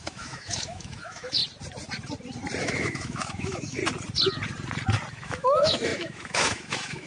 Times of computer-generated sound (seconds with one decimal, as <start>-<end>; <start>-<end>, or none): 0.0-1.4; 2.6-3.8; 5.1-7.1